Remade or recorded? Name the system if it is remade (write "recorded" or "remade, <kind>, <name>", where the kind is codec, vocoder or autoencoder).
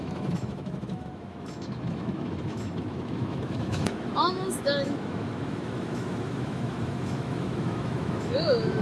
remade, autoencoder, DAC-VAE